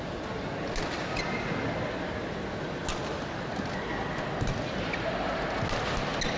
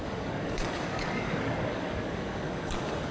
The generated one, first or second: second